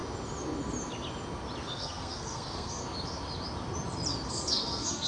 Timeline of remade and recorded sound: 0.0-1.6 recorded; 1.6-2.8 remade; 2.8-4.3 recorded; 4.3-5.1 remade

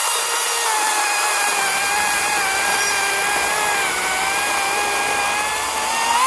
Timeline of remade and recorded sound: 0.0-6.3 recorded

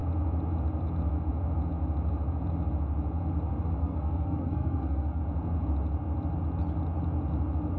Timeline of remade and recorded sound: 0.0-3.8 recorded; 3.8-5.2 remade; 5.2-7.8 recorded